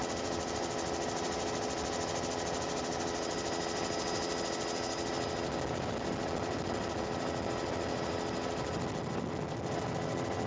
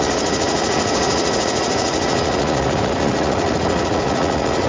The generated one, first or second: second